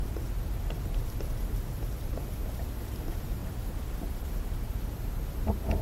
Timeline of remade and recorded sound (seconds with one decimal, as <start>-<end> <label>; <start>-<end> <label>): 0.0-2.2 remade; 2.2-3.4 recorded; 3.4-4.9 remade; 4.9-5.8 recorded